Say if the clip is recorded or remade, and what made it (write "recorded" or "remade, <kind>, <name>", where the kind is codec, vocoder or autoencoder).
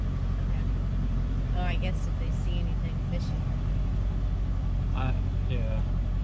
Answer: recorded